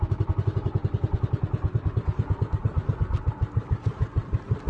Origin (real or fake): real